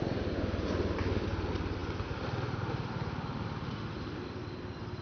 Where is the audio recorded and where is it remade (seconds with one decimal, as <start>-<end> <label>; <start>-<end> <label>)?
0.0-5.0 recorded